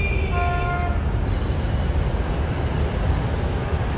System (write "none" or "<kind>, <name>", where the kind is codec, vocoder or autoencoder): none